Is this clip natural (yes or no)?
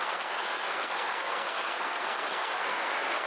no